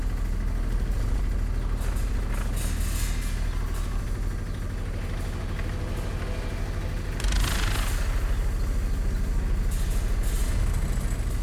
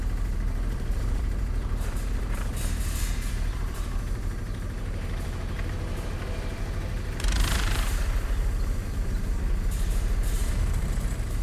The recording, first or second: first